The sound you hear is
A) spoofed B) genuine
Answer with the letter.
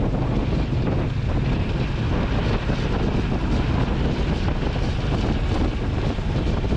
B